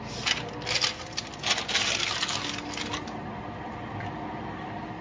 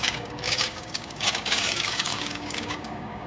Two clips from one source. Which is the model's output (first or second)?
second